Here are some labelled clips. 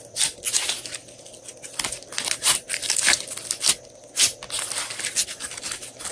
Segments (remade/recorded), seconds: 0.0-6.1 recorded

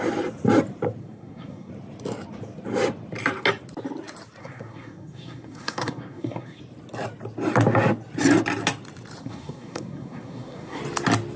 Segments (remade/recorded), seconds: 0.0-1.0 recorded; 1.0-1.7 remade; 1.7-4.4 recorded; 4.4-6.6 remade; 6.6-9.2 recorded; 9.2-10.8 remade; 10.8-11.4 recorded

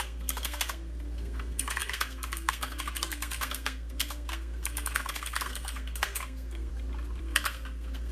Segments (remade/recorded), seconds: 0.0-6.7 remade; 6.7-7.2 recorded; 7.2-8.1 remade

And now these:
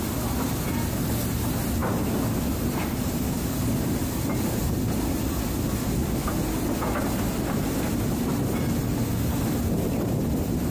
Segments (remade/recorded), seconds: 0.0-10.7 recorded

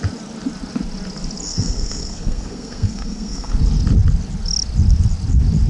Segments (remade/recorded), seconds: 0.0-1.5 recorded; 1.5-3.5 remade; 3.5-5.7 recorded

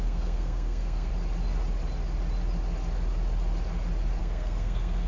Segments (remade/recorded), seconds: 0.0-1.1 remade; 1.1-4.2 recorded; 4.2-5.1 remade

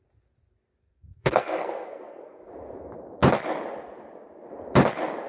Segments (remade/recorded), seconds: 0.0-0.8 recorded; 0.8-2.5 remade; 2.5-5.3 recorded

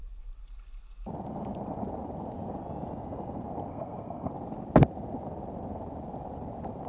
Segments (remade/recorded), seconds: 0.0-3.7 recorded; 3.7-4.3 remade; 4.3-6.9 recorded